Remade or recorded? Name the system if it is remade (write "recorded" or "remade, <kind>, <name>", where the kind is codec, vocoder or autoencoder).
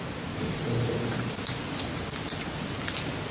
recorded